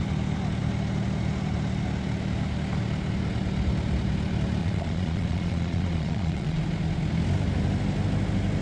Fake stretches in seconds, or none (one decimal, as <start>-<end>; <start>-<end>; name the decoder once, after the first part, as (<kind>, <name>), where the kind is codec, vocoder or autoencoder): 4.6-6.6 (vocoder, Vocos)